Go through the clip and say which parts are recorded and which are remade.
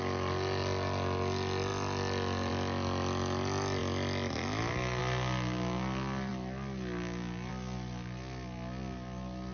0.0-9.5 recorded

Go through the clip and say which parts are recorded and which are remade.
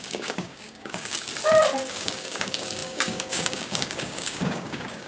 0.0-1.3 remade; 1.3-1.9 recorded; 1.9-5.1 remade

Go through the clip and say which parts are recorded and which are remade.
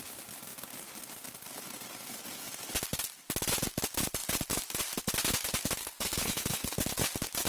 0.0-5.8 recorded; 5.8-6.8 remade; 6.8-7.5 recorded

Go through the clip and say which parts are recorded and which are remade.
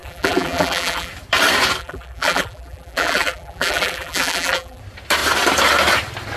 0.0-1.1 remade; 1.1-1.8 recorded; 1.8-4.8 remade; 4.8-6.4 recorded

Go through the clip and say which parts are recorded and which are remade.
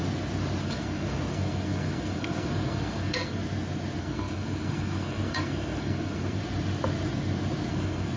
0.0-0.6 recorded; 0.6-3.4 remade; 3.4-4.0 recorded; 4.0-6.4 remade; 6.4-7.7 recorded; 7.7-8.2 remade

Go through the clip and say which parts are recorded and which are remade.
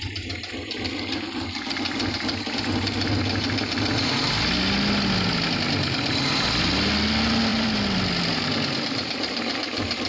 0.0-7.5 recorded; 7.5-10.1 remade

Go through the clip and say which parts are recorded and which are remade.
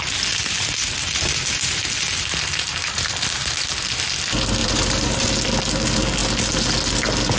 0.0-2.8 recorded; 2.8-3.5 remade; 3.5-4.6 recorded; 4.6-5.3 remade; 5.3-7.4 recorded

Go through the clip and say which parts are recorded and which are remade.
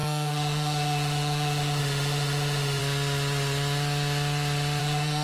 0.0-2.8 remade; 2.8-4.8 recorded; 4.8-5.2 remade